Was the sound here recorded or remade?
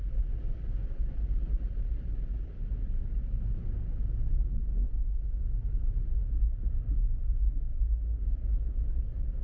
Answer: recorded